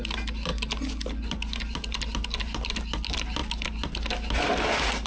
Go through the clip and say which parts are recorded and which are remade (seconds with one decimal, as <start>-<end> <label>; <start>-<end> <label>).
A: 0.0-5.1 recorded